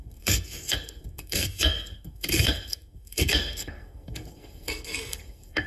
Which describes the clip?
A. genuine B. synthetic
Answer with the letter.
B